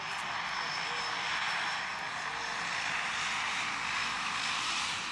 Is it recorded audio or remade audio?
recorded